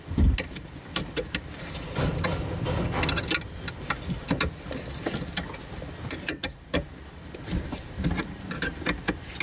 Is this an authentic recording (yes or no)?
yes